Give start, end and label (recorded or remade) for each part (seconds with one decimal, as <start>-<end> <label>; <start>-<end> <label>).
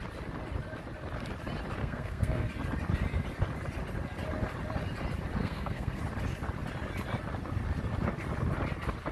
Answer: 0.0-1.8 recorded; 1.8-2.5 remade; 2.5-5.4 recorded; 5.4-6.0 remade; 6.0-9.1 recorded